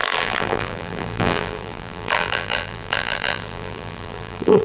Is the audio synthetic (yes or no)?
yes